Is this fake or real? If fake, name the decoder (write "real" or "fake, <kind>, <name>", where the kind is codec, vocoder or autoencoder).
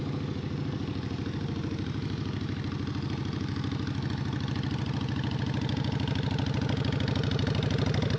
real